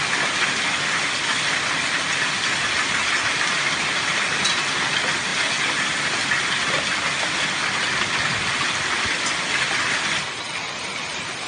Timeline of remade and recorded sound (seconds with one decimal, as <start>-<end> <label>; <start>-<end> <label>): 0.0-11.5 recorded